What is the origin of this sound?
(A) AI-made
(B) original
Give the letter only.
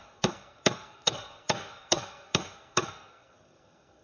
A